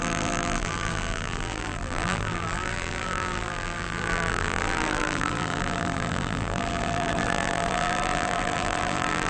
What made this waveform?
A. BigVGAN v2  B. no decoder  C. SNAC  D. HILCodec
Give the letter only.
A